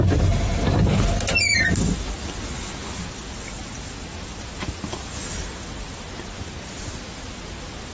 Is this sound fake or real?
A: real